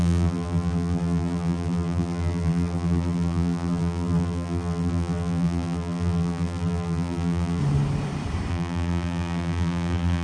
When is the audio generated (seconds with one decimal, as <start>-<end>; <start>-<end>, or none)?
0.0-7.6; 8.5-10.2